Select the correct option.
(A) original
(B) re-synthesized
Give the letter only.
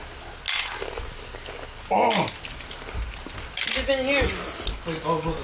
A